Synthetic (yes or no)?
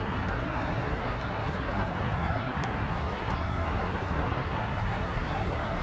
yes